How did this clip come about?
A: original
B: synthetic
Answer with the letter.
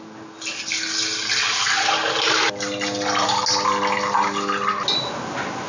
A